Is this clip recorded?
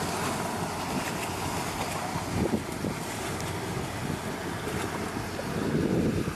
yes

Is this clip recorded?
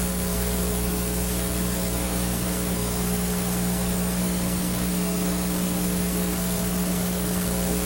no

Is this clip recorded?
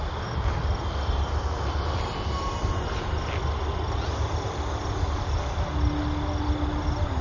yes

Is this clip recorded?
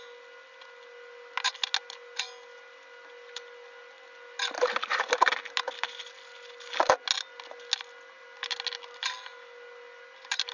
yes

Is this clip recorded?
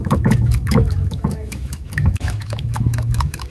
no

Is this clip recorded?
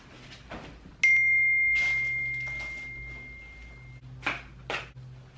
yes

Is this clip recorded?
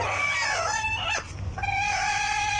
yes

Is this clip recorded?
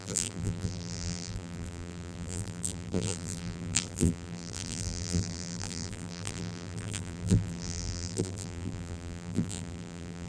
no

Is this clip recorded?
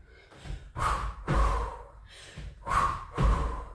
no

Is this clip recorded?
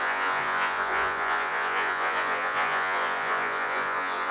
no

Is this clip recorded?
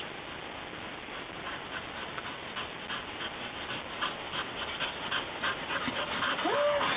yes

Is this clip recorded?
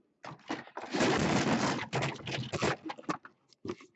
yes